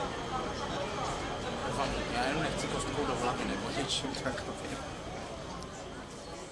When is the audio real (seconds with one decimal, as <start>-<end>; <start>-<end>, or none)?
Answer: 0.0-6.5